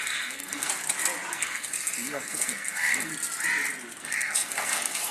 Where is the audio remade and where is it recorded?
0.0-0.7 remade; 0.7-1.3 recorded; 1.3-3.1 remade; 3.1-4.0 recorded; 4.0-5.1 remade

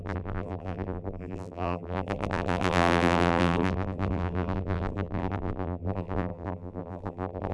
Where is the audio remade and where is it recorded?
0.0-7.5 remade

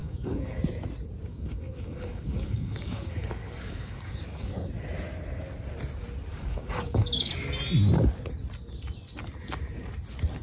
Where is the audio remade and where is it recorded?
0.0-0.6 remade; 0.6-1.3 recorded; 1.3-4.7 remade; 4.7-6.3 recorded; 6.3-7.3 remade; 7.3-10.4 recorded

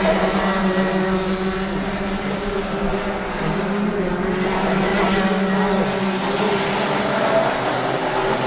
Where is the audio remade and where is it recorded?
0.0-8.5 recorded